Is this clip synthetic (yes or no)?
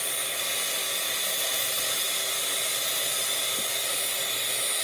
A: no